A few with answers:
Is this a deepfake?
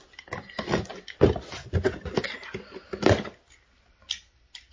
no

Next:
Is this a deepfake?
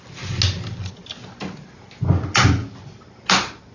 no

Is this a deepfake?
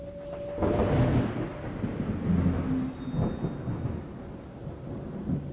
no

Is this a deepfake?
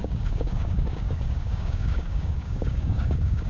yes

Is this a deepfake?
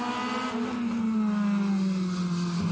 no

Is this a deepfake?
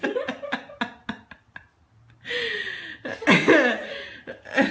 no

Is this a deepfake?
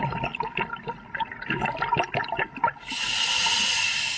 no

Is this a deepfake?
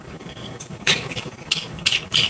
yes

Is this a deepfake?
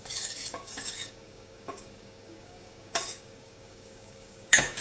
yes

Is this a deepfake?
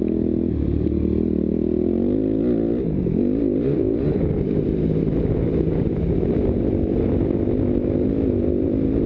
no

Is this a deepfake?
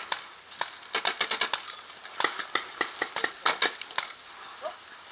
no